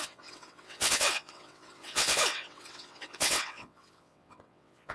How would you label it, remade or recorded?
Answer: remade